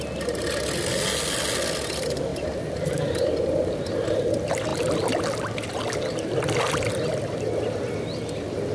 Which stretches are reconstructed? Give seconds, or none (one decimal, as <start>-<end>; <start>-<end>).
2.3-3.5